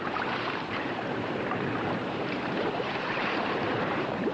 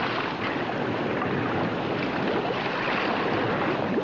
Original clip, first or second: second